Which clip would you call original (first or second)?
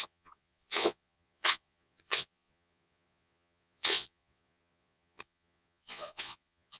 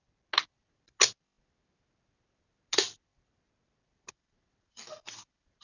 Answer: second